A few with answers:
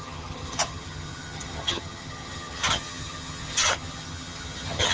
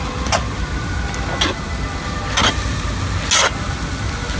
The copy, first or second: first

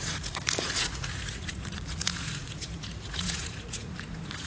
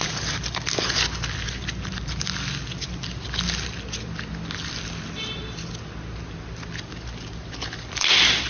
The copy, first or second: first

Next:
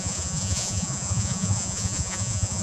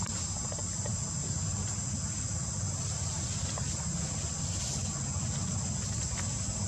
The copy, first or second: first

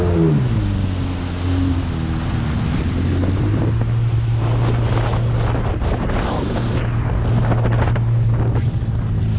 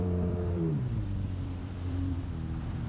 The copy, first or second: second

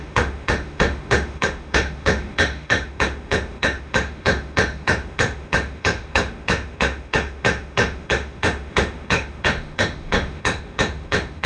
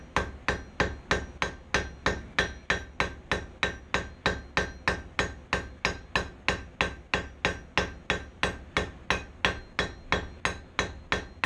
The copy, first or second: first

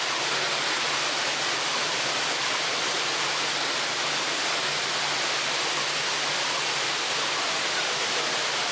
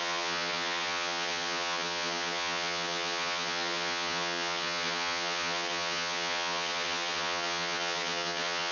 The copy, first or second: second